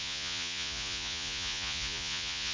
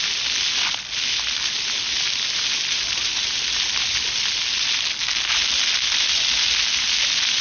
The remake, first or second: first